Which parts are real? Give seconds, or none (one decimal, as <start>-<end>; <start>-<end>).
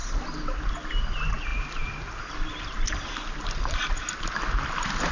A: 0.0-5.1